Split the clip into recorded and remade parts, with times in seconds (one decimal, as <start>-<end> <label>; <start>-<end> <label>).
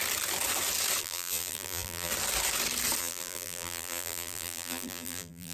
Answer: 0.0-1.0 recorded; 1.0-2.1 remade; 2.1-3.0 recorded; 3.0-5.5 remade